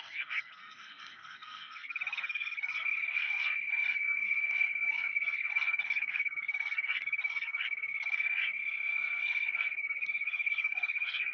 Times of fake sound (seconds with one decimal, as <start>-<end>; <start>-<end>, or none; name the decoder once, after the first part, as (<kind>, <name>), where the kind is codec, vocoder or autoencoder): 0.0-11.3 (codec, SNAC)